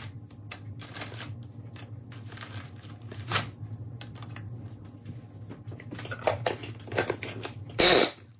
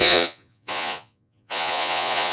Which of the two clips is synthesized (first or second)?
second